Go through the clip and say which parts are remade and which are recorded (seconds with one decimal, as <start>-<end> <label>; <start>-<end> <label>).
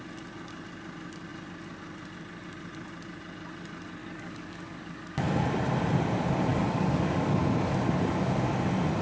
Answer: 0.0-4.0 recorded; 4.0-5.2 remade; 5.2-6.5 recorded; 6.5-7.4 remade; 7.4-9.0 recorded